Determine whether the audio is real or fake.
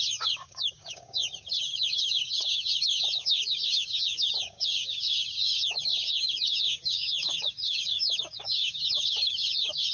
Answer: fake